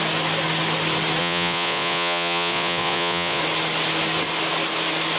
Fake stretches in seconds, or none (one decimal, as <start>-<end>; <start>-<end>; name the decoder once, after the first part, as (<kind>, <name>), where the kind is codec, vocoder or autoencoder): 1.2-3.4 (vocoder, Vocos)